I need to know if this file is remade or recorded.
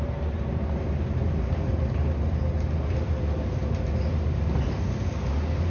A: recorded